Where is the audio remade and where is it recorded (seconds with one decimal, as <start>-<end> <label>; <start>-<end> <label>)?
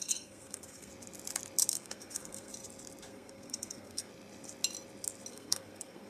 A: 0.0-0.9 remade; 0.9-1.7 recorded; 1.7-2.5 remade; 2.5-3.1 recorded; 3.1-4.1 remade; 4.1-5.3 recorded; 5.3-6.1 remade